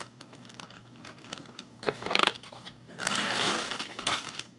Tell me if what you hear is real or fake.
fake